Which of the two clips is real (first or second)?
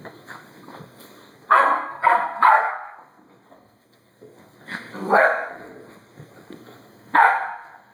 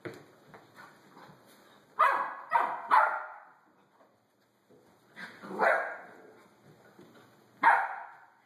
second